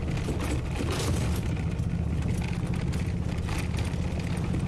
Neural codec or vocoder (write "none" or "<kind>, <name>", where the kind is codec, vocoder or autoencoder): none